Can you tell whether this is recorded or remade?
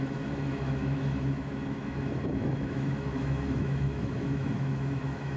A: remade